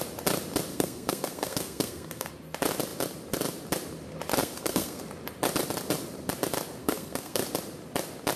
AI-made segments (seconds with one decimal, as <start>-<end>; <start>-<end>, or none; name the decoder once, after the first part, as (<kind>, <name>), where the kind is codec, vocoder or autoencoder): 0.7-2.3 (codec, SNAC); 4.4-5.0; 6.8-7.4